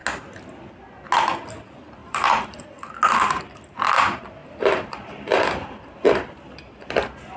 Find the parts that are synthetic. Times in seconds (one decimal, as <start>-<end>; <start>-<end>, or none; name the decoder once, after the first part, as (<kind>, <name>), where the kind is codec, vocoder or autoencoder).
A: 2.0-2.6 (vocoder, BigVGAN v2); 4.4-6.4